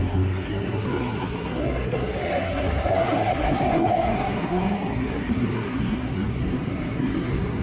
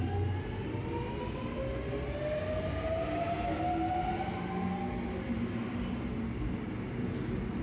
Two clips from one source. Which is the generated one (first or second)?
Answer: first